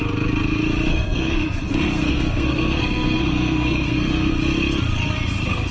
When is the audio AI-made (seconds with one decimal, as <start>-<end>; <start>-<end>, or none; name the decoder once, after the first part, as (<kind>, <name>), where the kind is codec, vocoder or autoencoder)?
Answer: 0.9-4.3 (codec, SNAC)

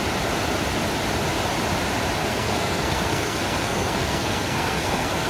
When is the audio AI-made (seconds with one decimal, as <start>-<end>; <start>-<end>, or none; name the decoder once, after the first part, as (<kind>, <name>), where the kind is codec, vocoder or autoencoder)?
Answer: 2.2-5.3 (codec, SNAC)

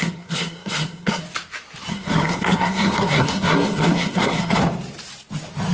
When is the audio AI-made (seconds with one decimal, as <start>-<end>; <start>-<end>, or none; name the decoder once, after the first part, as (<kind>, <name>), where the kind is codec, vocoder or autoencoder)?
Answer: 0.0-1.2 (codec, SNAC); 1.9-4.6

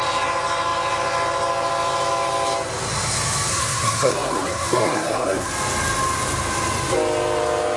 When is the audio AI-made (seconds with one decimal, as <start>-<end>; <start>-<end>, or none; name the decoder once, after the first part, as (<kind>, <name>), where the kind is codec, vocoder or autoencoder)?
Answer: 3.5-5.5 (codec, SNAC)

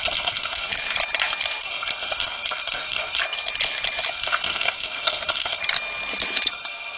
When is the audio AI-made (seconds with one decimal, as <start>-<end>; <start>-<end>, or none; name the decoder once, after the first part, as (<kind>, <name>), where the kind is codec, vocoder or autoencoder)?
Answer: 0.0-0.7 (codec, SNAC); 1.6-3.2; 4.1-5.6; 6.5-7.0

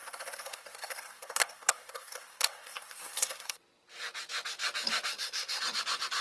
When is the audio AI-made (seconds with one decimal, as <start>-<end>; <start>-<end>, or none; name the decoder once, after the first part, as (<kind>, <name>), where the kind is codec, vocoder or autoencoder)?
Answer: 0.0-3.6 (codec, SNAC); 5.1-5.6